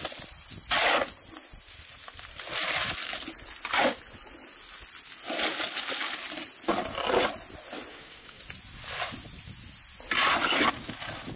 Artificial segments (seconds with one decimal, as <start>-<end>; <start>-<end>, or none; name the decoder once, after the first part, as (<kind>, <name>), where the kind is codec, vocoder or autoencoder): 7.9-8.4 (codec, DAC)